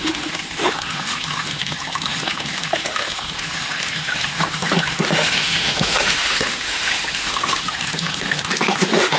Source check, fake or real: fake